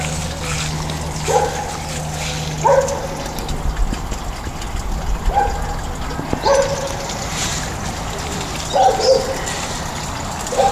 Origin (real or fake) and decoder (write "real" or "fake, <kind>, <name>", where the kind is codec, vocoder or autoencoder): real